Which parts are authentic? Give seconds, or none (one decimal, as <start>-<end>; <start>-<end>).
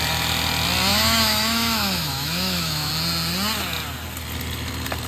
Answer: 0.0-0.9; 2.9-5.1